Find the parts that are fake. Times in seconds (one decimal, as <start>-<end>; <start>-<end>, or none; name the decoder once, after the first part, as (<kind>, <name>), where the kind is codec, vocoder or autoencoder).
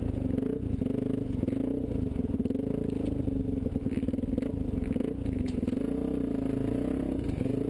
0.0-2.4 (vocoder, Vocos); 5.0-6.0; 6.5-7.7